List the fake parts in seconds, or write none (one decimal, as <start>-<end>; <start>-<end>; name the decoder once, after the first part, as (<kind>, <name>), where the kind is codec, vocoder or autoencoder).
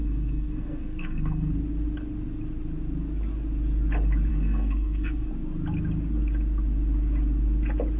0.0-1.5 (codec, SNAC); 4.3-5.3